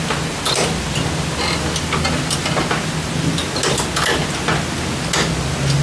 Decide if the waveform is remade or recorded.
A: recorded